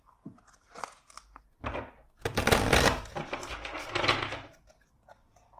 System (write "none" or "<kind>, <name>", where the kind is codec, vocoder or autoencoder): none